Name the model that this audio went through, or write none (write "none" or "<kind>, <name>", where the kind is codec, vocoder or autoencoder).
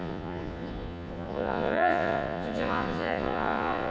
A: vocoder, Vocos